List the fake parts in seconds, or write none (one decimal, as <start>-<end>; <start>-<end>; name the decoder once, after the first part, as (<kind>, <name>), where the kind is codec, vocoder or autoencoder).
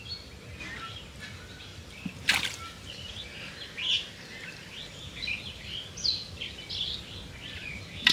none